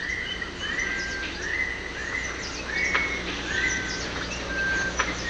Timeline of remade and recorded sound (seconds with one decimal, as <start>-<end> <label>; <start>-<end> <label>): 0.0-5.3 recorded